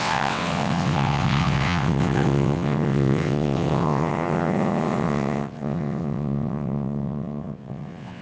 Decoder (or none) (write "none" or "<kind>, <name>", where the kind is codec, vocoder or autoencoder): vocoder, WaveNeXt